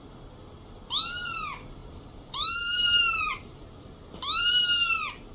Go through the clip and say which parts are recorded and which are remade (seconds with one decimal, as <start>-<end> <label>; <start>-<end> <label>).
0.0-1.8 recorded; 1.8-3.9 remade; 3.9-5.3 recorded